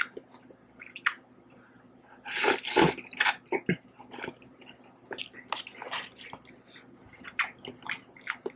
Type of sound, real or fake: real